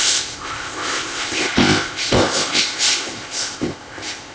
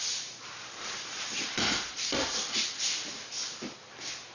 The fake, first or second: first